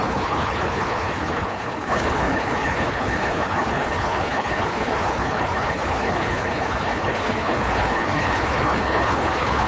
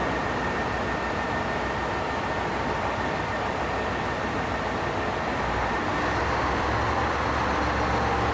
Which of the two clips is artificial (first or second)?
first